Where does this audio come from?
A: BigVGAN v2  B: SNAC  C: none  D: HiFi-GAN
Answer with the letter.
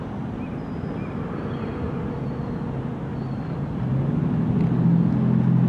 C